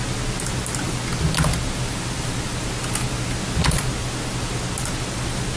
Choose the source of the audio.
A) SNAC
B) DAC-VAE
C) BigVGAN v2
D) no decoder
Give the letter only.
D